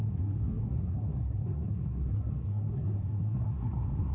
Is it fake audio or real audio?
fake